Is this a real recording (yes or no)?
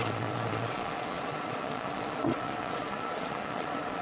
no